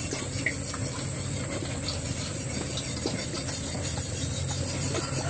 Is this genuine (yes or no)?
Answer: yes